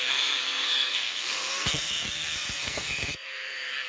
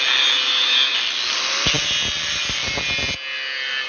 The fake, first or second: first